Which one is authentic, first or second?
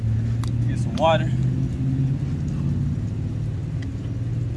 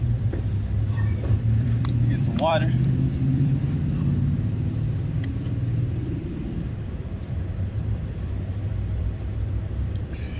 first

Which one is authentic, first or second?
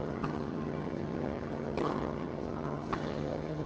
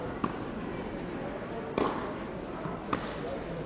second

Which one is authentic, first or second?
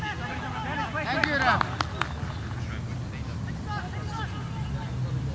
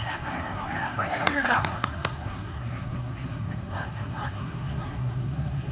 first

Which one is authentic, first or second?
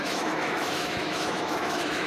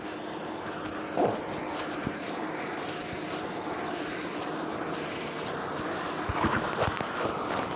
second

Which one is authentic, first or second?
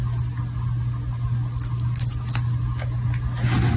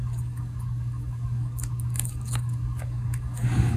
first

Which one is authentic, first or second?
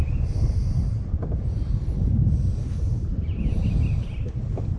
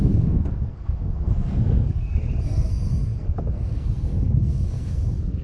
first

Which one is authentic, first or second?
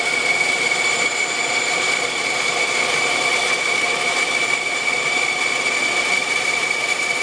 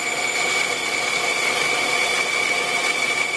second